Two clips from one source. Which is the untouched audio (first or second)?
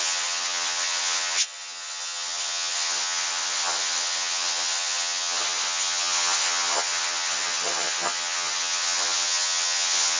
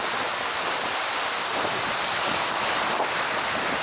second